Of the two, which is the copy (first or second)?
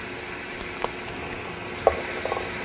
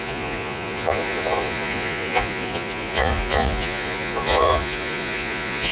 second